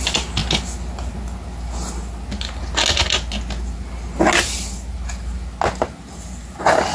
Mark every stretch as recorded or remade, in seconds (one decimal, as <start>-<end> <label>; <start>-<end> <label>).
0.0-6.9 recorded